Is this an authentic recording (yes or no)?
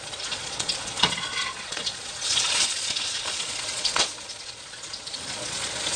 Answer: no